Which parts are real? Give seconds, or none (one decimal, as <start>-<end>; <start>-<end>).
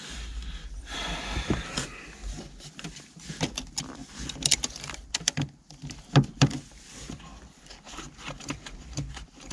0.0-4.0; 6.1-7.3; 8.0-9.5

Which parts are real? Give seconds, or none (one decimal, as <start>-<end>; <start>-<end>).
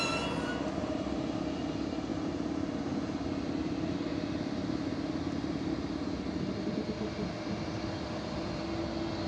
0.0-9.3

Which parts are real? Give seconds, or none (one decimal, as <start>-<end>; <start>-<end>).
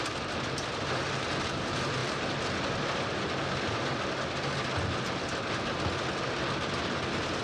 0.0-2.0; 3.5-7.4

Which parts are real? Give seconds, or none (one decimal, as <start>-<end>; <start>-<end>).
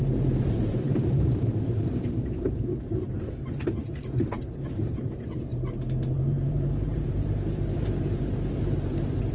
none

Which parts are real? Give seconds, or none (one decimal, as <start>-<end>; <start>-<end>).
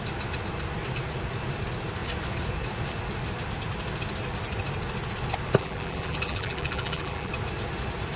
0.0-5.6; 7.3-8.2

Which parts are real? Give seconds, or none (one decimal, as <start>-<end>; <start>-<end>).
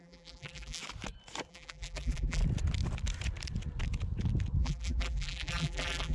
0.8-1.5; 2.4-4.6